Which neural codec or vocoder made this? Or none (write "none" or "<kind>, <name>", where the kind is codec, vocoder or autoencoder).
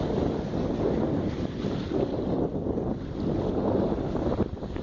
none